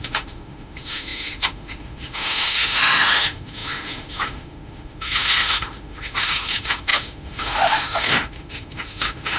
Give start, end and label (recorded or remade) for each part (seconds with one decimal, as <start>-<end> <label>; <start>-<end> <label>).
0.0-9.4 remade